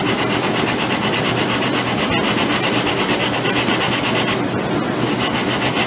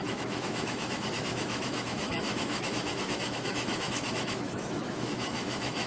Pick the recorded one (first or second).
first